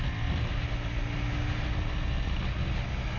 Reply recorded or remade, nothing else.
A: recorded